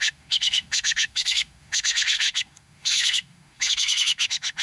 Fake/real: fake